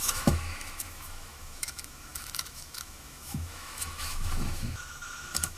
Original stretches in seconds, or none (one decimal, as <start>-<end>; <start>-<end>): none